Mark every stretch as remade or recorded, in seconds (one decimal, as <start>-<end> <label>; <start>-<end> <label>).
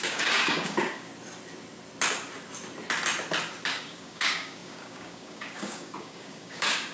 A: 0.0-1.1 remade; 1.1-3.7 recorded; 3.7-6.9 remade